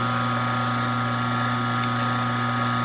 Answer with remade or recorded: recorded